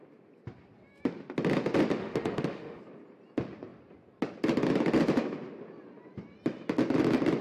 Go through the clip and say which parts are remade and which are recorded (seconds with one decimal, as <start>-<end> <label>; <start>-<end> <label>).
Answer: 0.0-2.0 recorded; 2.0-2.8 remade; 2.8-7.4 recorded